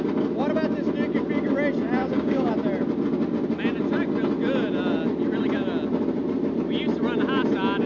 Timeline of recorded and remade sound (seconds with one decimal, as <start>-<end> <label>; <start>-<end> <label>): 0.0-2.0 recorded; 2.0-2.5 remade; 2.5-7.9 recorded